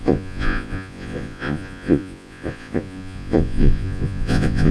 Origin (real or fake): fake